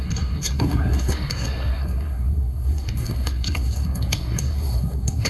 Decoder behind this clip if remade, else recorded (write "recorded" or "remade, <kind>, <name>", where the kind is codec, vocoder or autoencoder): remade, codec, SNAC